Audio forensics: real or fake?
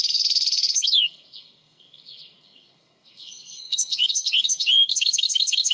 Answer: fake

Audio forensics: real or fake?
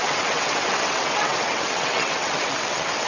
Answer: fake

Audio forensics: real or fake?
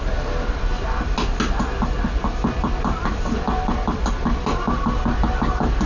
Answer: real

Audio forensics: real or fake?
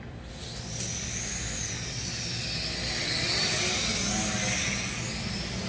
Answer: real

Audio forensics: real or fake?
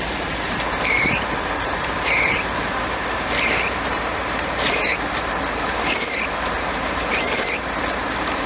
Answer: fake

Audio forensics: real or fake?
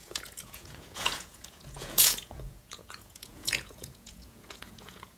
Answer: fake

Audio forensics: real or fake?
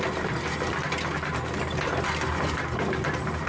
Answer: real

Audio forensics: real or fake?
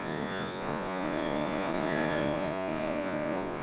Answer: fake